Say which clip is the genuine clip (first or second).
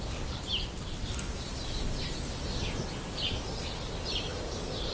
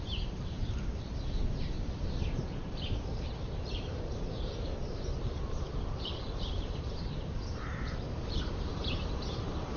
first